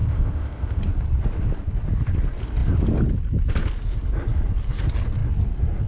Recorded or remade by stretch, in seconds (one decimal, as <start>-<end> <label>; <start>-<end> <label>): 0.0-0.8 remade; 0.8-5.9 recorded